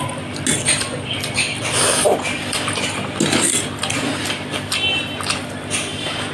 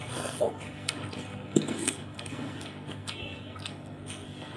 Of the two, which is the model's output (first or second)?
second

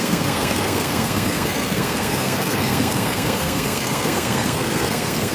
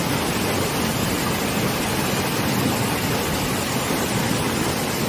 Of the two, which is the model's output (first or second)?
first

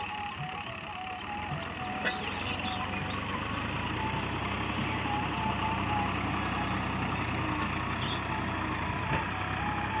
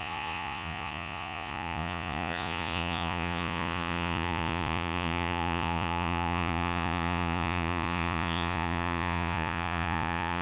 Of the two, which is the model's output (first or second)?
second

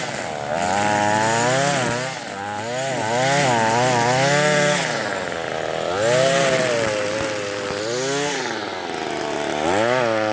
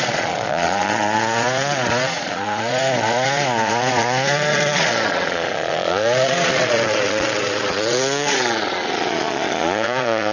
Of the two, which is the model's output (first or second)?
second